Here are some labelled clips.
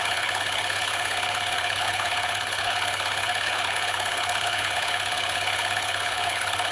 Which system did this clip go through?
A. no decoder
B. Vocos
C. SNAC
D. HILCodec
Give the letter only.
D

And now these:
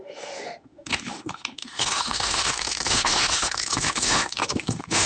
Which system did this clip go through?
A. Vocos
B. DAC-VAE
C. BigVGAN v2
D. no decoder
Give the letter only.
B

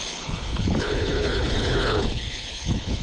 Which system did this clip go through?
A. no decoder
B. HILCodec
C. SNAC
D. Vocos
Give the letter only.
B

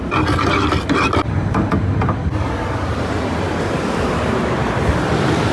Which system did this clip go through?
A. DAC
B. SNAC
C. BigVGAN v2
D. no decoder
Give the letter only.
C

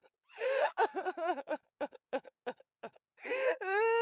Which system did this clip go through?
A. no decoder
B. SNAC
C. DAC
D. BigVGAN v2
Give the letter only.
C